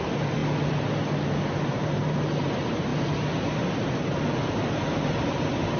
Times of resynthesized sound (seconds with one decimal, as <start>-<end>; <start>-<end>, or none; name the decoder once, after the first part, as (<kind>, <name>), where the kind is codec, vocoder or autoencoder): 0.0-0.4 (vocoder, BigVGAN v2); 1.7-2.9